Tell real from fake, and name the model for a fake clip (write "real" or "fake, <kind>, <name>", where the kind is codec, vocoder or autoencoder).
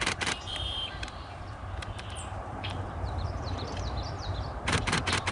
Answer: fake, vocoder, BigVGAN v2